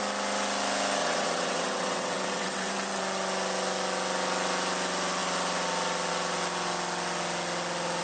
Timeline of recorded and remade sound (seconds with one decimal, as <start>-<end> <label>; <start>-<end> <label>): 0.0-1.0 recorded; 1.0-3.0 remade; 3.0-8.0 recorded